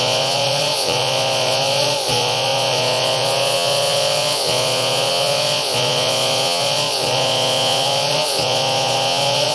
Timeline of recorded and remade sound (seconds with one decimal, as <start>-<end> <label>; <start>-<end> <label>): 0.0-9.5 remade